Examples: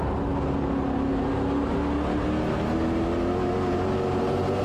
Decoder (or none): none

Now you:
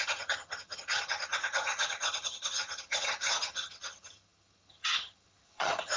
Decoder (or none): vocoder, HiFi-GAN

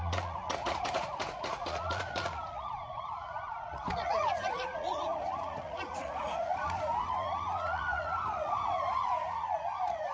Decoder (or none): vocoder, Vocos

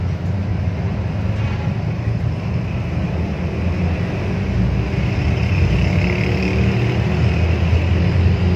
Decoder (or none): none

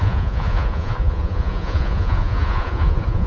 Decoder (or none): vocoder, Vocos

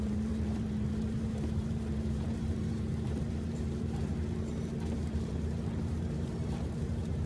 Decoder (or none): vocoder, BigVGAN v2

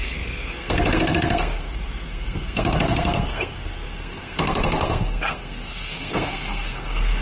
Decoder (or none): codec, SNAC